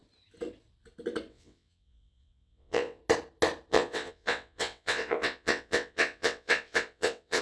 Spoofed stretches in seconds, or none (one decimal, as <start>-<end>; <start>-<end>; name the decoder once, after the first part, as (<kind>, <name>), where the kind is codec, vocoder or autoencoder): 1.3-3.0 (vocoder, WaveNeXt); 3.7-7.4